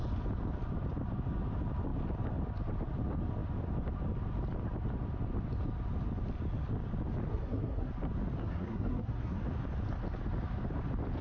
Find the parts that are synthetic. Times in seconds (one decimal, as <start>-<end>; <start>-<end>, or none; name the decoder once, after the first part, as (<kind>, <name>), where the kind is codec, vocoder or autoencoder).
7.3-7.9 (codec, SNAC); 8.4-9.4